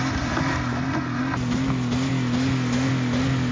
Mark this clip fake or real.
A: real